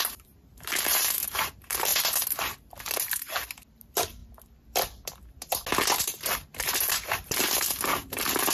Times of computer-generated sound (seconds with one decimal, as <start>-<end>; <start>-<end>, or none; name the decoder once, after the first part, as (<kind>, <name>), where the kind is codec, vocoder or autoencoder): 0.0-1.9 (vocoder, BigVGAN v2); 2.8-4.2; 6.0-8.5

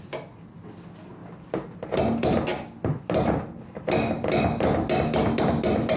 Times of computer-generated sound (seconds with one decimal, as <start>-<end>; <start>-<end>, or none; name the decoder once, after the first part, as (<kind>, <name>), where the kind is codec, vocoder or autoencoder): 1.2-2.0 (vocoder, BigVGAN v2)